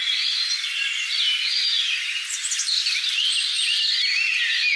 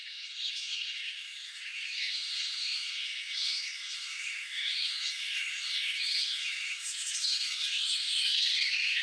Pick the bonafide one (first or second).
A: first